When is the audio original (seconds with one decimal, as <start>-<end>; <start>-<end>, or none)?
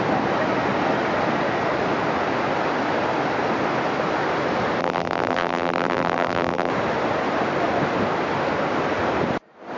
0.0-4.8; 6.7-9.8